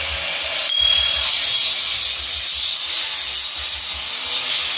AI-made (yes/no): no